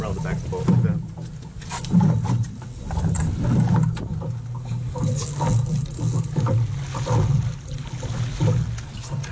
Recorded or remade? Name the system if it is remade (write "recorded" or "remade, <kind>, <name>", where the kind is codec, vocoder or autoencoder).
recorded